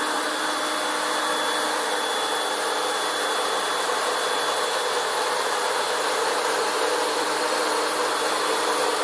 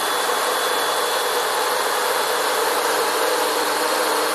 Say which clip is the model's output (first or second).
second